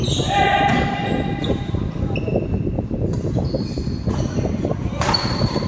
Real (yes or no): yes